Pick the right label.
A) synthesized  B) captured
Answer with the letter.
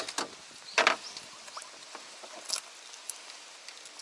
B